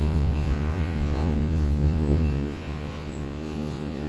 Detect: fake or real fake